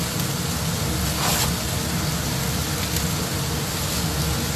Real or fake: real